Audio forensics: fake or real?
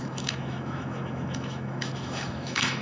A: fake